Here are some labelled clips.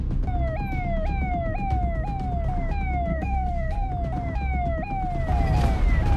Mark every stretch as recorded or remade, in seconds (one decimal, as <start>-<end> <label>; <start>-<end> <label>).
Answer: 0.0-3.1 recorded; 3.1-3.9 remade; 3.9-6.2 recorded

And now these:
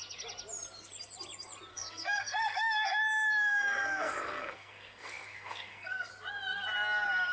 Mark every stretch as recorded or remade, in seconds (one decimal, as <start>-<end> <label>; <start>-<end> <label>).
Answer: 0.0-1.7 recorded; 1.7-6.1 remade; 6.1-7.3 recorded

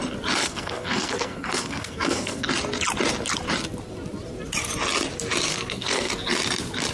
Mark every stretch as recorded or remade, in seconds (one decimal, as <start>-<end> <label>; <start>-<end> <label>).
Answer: 0.0-0.4 recorded; 0.4-2.5 remade; 2.5-5.5 recorded; 5.5-6.1 remade; 6.1-6.9 recorded

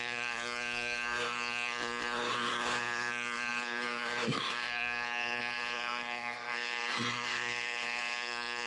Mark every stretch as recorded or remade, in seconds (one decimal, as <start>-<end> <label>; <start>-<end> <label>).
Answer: 0.0-8.7 remade